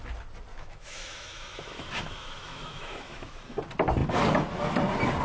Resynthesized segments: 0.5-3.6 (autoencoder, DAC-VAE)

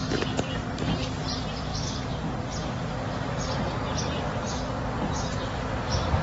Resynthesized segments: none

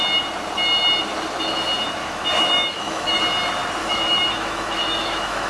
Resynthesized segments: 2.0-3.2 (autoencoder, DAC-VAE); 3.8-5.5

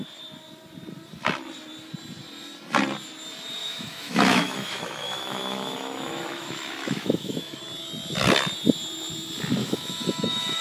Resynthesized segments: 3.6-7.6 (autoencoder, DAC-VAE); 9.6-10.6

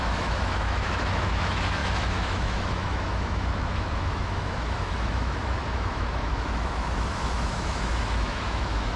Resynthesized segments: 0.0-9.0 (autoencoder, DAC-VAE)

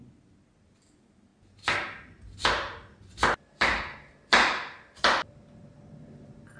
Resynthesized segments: none